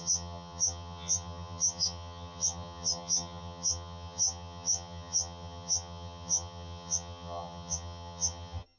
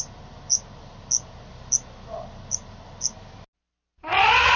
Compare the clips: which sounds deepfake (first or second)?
first